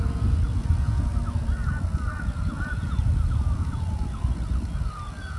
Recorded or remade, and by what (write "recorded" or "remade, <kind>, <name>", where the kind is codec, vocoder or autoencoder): remade, vocoder, Vocos